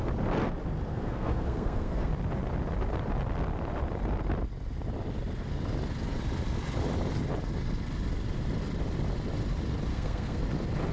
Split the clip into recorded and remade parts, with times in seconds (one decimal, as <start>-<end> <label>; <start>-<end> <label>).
0.0-0.9 recorded; 0.9-2.1 remade; 2.1-9.9 recorded; 9.9-10.4 remade; 10.4-10.9 recorded